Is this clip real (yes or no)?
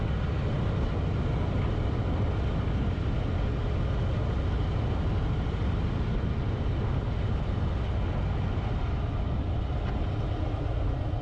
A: yes